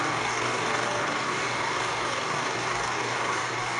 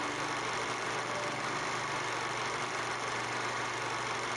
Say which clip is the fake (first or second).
first